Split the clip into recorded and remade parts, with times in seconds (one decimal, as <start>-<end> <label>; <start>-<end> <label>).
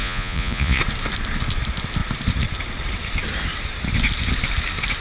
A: 0.0-0.8 remade; 0.8-5.0 recorded